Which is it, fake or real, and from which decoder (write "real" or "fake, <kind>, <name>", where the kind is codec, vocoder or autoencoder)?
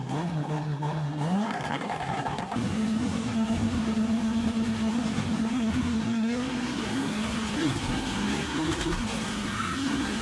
fake, codec, SNAC